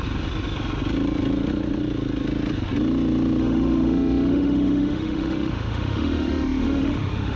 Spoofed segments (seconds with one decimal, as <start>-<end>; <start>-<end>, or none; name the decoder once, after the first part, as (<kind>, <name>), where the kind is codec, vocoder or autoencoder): 3.4-7.4 (autoencoder, DAC-VAE)